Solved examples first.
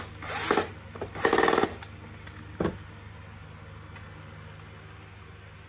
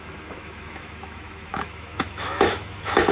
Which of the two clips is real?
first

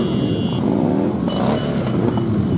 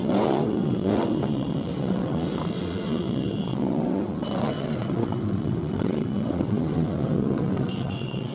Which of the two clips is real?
first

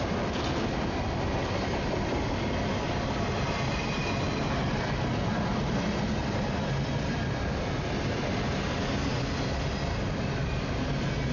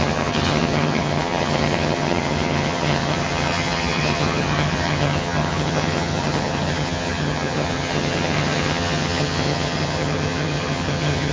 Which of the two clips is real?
first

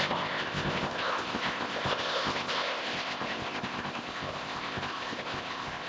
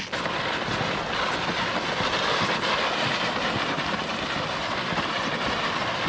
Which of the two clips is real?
second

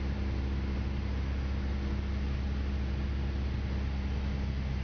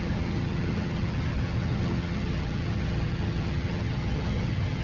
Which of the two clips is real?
first